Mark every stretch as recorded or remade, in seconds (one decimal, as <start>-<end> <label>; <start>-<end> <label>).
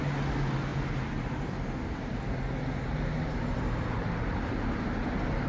0.0-5.5 recorded